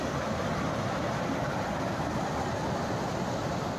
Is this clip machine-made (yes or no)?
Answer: no